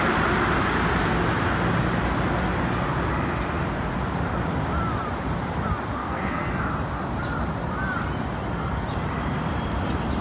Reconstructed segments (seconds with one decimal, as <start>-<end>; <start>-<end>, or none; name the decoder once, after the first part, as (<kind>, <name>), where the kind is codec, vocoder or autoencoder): 6.0-6.5 (codec, SNAC)